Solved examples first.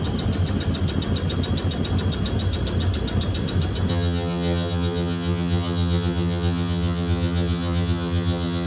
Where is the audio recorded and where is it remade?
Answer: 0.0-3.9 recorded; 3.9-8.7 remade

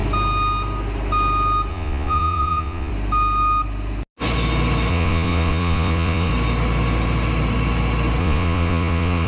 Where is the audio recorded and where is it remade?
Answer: 0.0-1.7 recorded; 1.7-2.9 remade; 2.9-4.9 recorded; 4.9-6.3 remade; 6.3-8.2 recorded; 8.2-9.3 remade

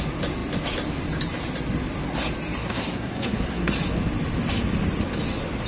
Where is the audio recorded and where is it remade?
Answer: 0.0-2.6 recorded; 2.6-3.7 remade; 3.7-5.7 recorded

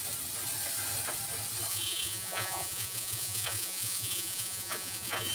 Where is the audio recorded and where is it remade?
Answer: 0.0-1.7 recorded; 1.7-5.3 remade

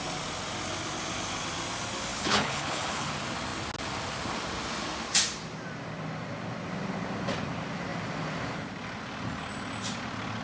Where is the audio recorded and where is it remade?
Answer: 0.0-2.1 recorded; 2.1-3.1 remade; 3.1-10.4 recorded

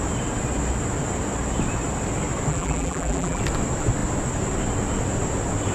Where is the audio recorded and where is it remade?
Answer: 0.0-2.5 recorded; 2.5-3.4 remade; 3.4-5.7 recorded

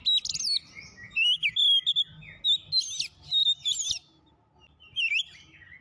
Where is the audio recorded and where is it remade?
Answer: 0.0-1.0 recorded; 1.0-1.6 remade; 1.6-5.8 recorded

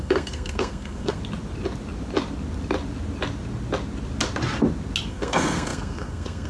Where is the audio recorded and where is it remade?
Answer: 0.0-1.2 remade; 1.2-5.1 recorded; 5.1-6.5 remade